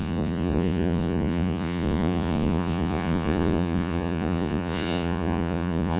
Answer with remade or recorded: remade